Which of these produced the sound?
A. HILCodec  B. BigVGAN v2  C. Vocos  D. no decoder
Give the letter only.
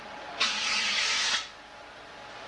D